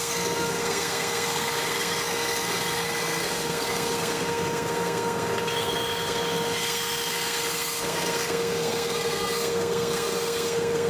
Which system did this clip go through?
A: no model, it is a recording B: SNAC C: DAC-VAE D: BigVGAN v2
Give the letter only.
B